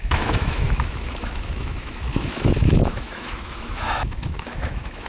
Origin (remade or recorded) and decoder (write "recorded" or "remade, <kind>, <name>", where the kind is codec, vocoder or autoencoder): remade, autoencoder, DAC-VAE